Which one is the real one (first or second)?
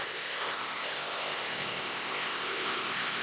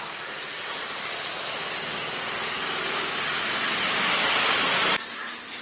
second